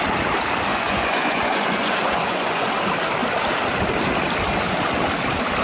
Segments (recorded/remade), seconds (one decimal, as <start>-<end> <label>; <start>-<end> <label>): 0.0-0.7 recorded; 0.7-2.7 remade; 2.7-5.6 recorded